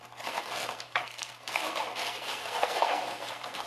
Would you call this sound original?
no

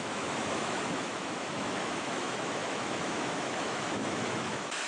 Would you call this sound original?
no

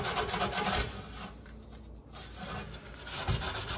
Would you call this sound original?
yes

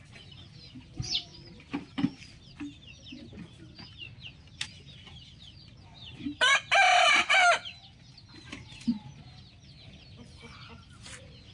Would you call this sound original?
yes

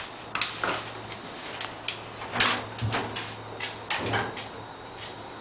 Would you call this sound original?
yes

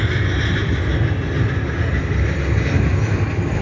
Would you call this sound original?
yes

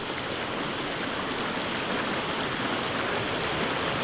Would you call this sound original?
yes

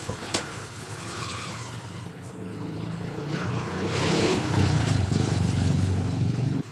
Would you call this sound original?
no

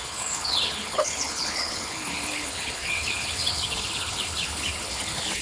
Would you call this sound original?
no